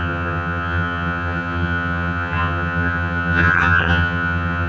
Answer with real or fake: fake